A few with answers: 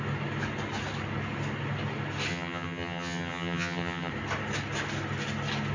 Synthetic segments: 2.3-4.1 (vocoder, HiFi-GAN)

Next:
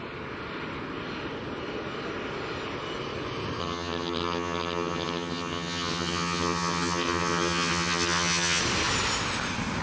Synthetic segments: 3.6-8.6 (vocoder, HiFi-GAN)

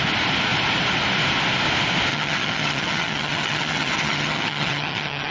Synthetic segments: 2.1-5.3 (vocoder, HiFi-GAN)

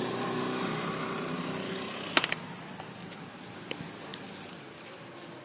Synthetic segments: none

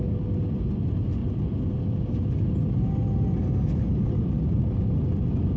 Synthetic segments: none

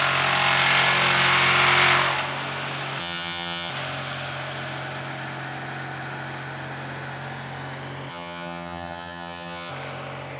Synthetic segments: 3.0-3.7 (vocoder, HiFi-GAN); 8.1-9.7

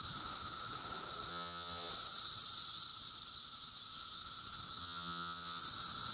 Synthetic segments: 1.3-1.9 (vocoder, HiFi-GAN); 4.8-5.6